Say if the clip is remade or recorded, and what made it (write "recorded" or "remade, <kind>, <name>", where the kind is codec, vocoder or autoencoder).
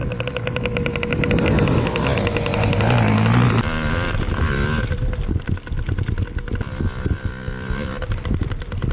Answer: recorded